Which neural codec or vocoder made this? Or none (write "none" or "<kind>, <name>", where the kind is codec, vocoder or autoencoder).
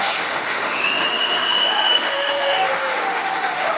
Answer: autoencoder, DAC-VAE